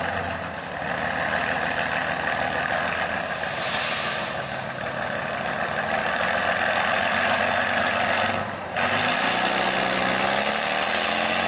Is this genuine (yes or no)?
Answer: yes